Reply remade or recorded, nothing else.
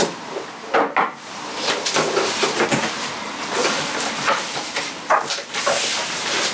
recorded